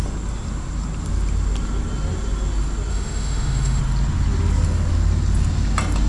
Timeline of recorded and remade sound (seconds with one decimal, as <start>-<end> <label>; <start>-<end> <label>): 0.0-2.9 recorded; 2.9-3.8 remade; 3.8-6.1 recorded